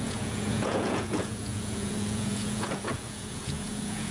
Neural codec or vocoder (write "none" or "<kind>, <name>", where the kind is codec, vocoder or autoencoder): vocoder, Vocos